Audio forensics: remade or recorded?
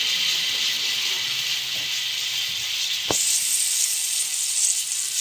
recorded